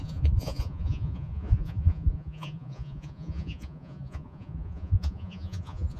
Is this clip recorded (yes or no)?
no